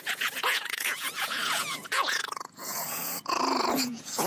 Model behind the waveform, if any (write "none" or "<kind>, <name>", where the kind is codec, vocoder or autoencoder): vocoder, Vocos